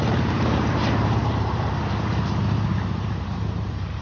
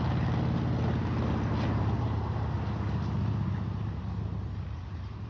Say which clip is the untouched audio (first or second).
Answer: second